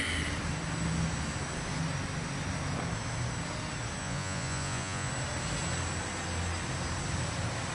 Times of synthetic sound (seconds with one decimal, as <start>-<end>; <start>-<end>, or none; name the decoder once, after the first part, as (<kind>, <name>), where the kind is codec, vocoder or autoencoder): 4.0-5.1 (vocoder, Vocos)